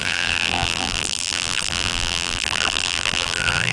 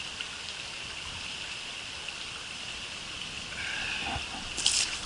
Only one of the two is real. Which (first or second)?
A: second